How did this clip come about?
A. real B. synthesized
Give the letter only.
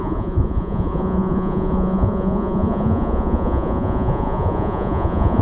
B